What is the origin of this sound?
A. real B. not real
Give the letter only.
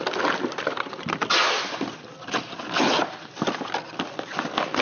A